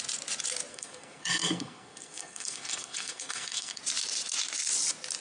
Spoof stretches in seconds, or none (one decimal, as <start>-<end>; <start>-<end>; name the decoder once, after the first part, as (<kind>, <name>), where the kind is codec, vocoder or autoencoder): 0.7-3.8 (codec, SNAC)

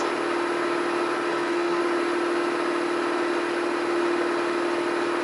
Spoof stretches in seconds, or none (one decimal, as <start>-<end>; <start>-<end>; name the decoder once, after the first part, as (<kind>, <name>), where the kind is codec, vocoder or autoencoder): 1.3-1.8 (codec, SNAC)

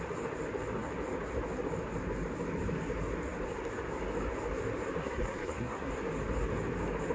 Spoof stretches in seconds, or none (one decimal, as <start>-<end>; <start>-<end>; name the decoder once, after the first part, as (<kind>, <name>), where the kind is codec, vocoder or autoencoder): 5.0-5.9 (codec, SNAC)

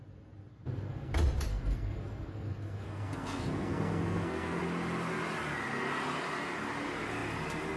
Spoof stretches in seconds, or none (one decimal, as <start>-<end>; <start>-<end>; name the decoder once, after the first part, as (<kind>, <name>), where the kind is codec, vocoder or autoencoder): 0.5-1.1 (codec, SNAC); 1.5-4.6

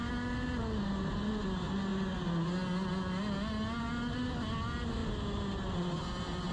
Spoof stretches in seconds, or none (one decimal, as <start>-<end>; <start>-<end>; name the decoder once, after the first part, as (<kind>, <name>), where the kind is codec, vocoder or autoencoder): none

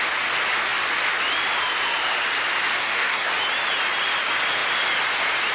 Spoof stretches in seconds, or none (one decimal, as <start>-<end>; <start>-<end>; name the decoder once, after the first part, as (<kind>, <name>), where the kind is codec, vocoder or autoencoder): 2.8-3.3 (codec, SNAC)

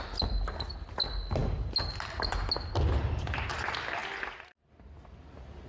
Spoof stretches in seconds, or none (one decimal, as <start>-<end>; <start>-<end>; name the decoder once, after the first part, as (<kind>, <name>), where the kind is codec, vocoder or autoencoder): none

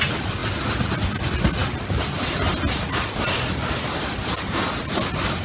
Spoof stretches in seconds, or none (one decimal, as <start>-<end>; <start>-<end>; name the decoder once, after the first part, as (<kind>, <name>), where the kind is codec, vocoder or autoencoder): none